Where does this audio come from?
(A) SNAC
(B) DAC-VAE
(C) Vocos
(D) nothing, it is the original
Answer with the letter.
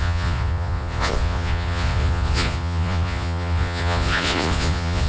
C